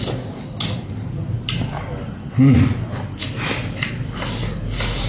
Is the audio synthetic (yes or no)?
no